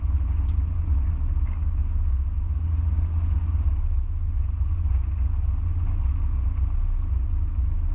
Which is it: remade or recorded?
recorded